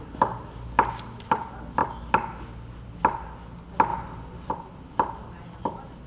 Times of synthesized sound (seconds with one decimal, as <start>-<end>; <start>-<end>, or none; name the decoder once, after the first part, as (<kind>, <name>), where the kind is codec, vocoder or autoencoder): 3.9-4.5 (vocoder, BigVGAN v2)